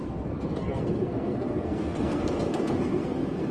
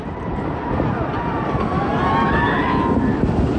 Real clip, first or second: second